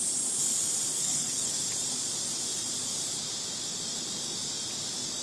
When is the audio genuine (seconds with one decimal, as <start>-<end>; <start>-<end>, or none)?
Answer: 0.0-0.9; 1.6-5.2